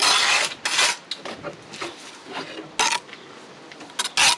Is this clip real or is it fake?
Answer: real